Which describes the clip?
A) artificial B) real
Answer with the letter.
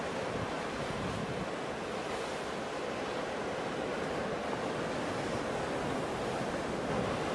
B